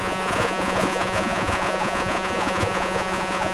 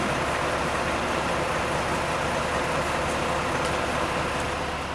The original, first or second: second